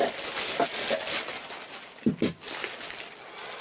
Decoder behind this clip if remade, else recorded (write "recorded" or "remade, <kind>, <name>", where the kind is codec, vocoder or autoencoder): recorded